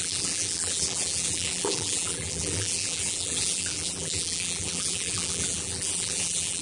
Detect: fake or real fake